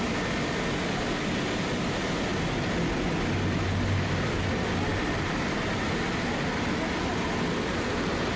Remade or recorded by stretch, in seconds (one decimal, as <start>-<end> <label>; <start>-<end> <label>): 0.0-8.4 recorded